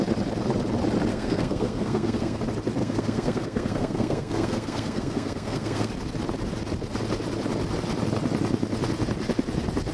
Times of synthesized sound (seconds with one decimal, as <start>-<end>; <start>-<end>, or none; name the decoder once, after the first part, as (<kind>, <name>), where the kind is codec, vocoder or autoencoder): 1.1-2.4 (codec, SNAC); 2.8-5.9